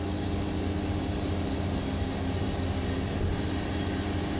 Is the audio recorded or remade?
recorded